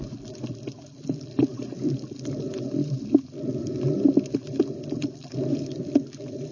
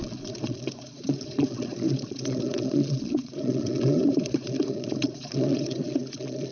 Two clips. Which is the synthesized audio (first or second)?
second